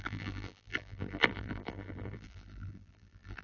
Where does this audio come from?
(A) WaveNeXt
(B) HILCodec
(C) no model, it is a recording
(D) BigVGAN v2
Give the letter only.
D